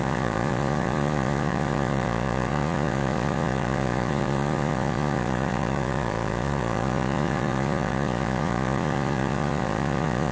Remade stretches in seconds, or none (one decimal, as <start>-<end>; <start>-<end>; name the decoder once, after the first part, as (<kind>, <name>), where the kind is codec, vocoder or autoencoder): 0.0-10.3 (vocoder, Vocos)